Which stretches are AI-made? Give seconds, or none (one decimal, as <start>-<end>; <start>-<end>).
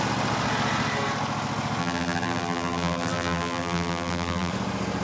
1.8-4.5